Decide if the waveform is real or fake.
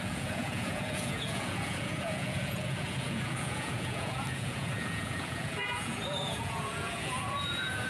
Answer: fake